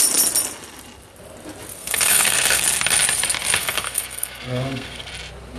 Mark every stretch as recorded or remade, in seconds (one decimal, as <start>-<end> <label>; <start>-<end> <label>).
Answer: 0.0-1.8 recorded; 1.8-2.6 remade; 2.6-3.6 recorded; 3.6-5.1 remade; 5.1-5.6 recorded